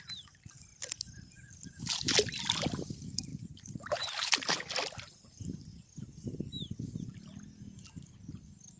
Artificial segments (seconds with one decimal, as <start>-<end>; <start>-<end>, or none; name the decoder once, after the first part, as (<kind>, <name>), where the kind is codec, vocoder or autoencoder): 3.3-4.3 (vocoder, BigVGAN v2)